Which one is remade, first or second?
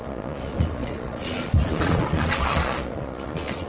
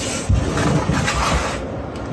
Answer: first